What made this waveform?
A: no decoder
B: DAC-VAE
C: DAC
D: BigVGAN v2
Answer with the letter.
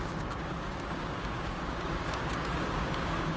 C